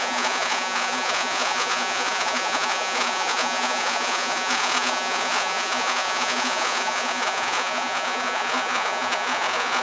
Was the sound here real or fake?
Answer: fake